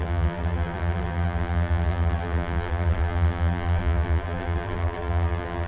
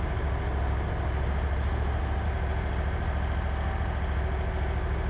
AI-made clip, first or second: first